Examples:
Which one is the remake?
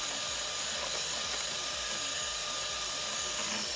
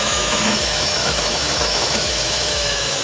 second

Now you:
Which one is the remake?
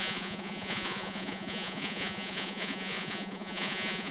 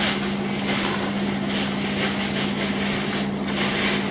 first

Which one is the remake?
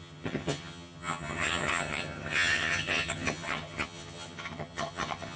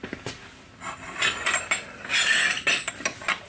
first